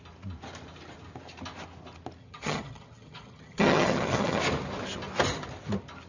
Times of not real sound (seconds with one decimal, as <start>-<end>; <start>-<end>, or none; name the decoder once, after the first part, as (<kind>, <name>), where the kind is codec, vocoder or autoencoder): 2.2-4.4 (vocoder, HiFi-GAN)